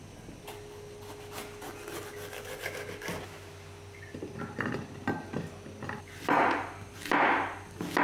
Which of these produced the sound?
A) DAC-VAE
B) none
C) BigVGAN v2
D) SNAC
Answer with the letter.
B